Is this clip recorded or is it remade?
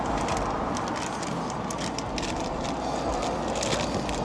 recorded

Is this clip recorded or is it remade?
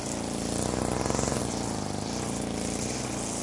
recorded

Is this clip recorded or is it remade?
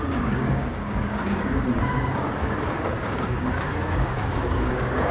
remade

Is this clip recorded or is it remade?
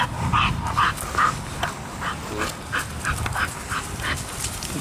recorded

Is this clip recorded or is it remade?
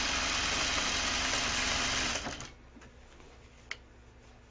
recorded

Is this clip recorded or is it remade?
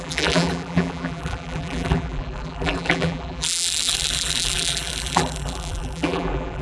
remade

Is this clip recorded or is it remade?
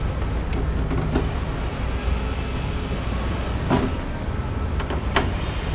recorded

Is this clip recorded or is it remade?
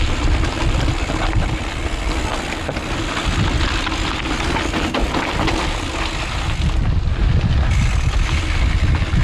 recorded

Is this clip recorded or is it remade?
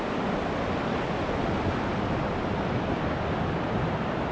recorded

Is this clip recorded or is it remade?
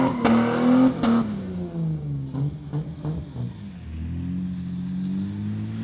recorded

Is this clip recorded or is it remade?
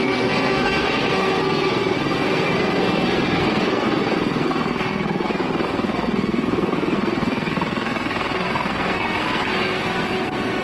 remade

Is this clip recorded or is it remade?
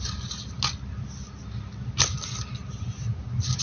recorded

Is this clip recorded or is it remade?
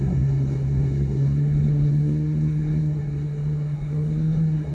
remade